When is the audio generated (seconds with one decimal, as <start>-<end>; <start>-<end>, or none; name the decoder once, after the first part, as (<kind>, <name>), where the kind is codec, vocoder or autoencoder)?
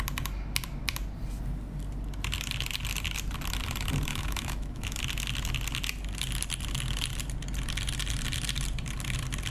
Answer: 4.1-5.0 (autoencoder, DAC-VAE)